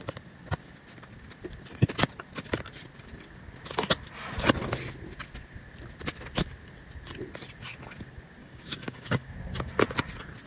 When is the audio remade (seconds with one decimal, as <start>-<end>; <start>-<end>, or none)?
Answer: 8.4-9.3